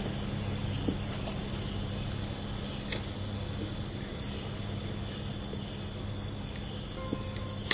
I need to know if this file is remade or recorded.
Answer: recorded